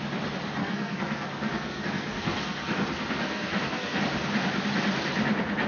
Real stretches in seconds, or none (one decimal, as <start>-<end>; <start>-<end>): 0.0-0.6; 4.0-5.7